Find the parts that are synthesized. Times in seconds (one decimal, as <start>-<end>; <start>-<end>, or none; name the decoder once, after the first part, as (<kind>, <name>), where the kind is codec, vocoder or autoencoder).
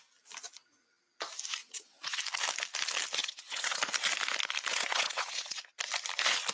1.6-2.2 (vocoder, WaveNeXt); 3.2-3.8; 4.7-5.6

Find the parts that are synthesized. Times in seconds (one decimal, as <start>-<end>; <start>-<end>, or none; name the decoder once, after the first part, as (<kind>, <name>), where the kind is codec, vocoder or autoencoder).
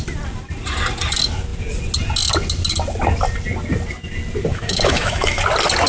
4.5-5.4 (autoencoder, DAC-VAE)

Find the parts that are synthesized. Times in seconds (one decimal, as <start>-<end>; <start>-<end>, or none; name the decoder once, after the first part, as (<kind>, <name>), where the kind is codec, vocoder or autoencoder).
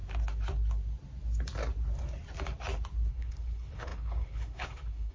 3.1-5.1 (codec, HILCodec)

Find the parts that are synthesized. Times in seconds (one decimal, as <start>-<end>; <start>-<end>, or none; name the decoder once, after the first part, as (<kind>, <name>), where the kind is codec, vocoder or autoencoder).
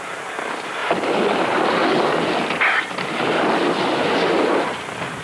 none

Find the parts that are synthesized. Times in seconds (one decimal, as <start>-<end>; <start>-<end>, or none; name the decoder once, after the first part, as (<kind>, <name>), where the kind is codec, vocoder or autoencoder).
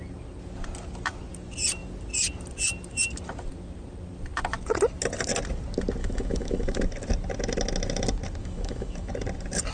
6.0-6.8 (autoencoder, DAC-VAE); 8.4-9.1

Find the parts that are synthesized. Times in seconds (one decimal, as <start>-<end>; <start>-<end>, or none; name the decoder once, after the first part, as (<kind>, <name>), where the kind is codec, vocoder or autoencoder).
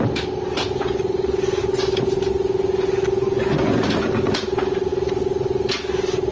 none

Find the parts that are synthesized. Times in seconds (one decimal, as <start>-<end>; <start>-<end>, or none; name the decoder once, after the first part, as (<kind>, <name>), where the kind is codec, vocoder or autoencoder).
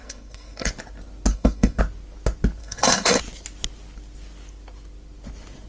0.0-0.7 (codec, SNAC); 1.3-1.8; 2.6-3.2